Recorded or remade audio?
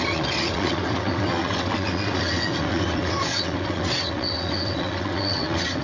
remade